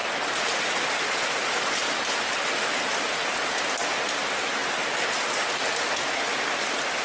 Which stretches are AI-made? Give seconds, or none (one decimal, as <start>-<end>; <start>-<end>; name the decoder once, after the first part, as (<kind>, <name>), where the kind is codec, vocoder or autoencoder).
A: none